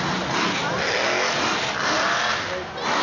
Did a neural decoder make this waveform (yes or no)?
no